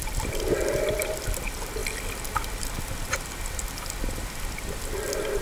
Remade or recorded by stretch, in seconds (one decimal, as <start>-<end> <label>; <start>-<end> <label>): 0.0-1.8 remade; 1.8-4.8 recorded; 4.8-5.4 remade